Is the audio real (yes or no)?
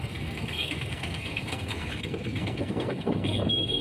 no